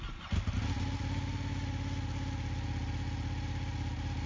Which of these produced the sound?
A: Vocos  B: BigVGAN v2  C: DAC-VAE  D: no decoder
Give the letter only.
D